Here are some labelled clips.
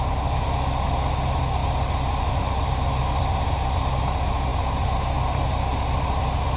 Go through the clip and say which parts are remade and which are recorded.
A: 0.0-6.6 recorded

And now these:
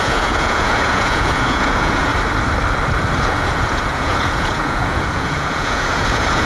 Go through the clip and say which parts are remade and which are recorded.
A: 0.0-2.1 remade; 2.1-3.2 recorded; 3.2-6.5 remade

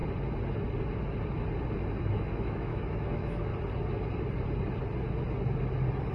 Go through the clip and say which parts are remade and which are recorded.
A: 0.0-2.0 recorded; 2.0-3.5 remade; 3.5-6.1 recorded

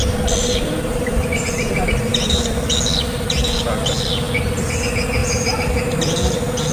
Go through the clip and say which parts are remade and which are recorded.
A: 0.0-0.4 recorded; 0.4-2.4 remade; 2.4-5.2 recorded; 5.2-6.0 remade; 6.0-6.7 recorded

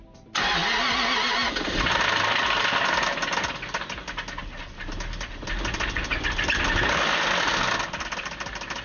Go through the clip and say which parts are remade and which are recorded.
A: 0.0-8.8 recorded

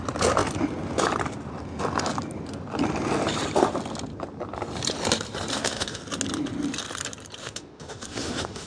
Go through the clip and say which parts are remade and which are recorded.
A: 0.0-5.5 recorded; 5.5-6.0 remade; 6.0-7.4 recorded; 7.4-8.7 remade